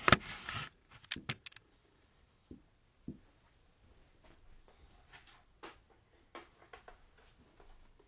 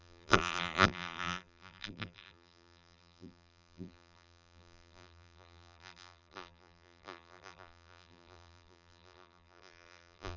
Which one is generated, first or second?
second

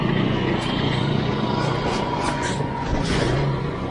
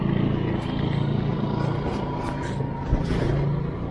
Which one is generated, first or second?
first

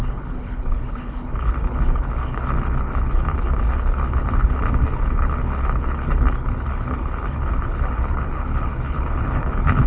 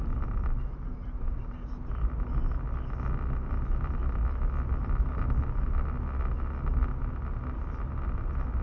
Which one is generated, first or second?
first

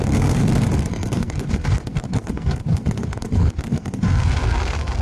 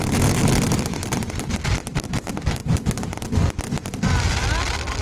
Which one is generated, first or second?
first